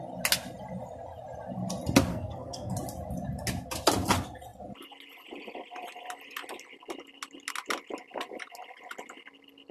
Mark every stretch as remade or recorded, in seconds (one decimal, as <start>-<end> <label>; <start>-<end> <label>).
0.0-2.1 recorded; 2.1-2.7 remade; 2.7-9.7 recorded